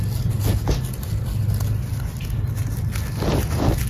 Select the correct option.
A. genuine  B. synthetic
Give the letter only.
A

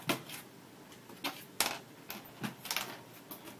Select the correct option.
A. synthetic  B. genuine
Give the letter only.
B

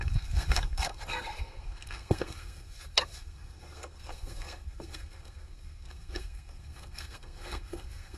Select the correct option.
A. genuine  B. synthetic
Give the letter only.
B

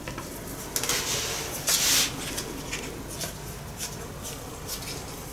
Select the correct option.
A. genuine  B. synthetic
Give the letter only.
A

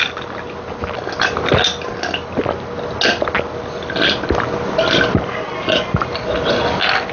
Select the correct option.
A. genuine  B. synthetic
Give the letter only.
A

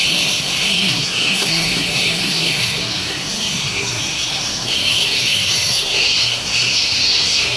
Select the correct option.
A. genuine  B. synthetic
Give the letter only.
B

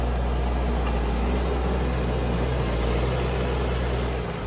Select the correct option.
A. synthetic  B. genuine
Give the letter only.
B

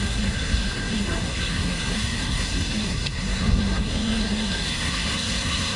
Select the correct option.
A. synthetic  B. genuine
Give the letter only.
A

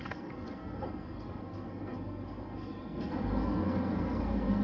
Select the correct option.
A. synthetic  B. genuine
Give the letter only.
A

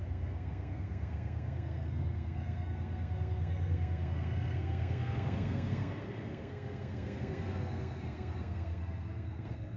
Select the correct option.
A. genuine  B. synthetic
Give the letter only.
B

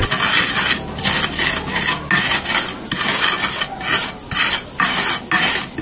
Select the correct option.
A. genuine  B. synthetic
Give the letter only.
A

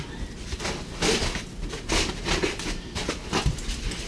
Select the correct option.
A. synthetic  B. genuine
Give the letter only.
B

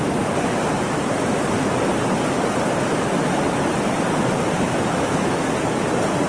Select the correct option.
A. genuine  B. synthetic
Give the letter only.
A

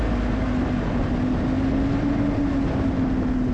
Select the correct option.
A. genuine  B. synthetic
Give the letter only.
A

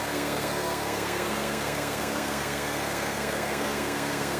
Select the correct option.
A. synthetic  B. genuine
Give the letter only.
A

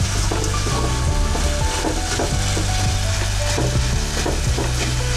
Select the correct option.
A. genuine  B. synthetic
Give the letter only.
A